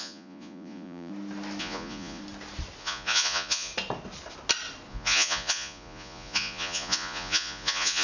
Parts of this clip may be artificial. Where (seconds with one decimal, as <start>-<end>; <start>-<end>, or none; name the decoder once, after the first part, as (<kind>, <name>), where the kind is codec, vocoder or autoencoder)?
0.0-1.1 (vocoder, Vocos); 1.6-2.2; 2.8-3.7; 4.9-8.0